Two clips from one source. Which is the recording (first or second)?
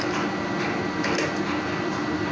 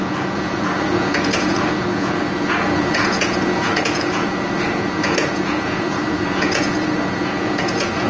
first